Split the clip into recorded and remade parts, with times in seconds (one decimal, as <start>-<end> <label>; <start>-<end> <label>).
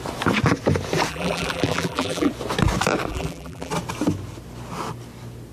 0.0-1.1 recorded; 1.1-2.3 remade; 2.3-3.1 recorded; 3.1-3.7 remade; 3.7-5.5 recorded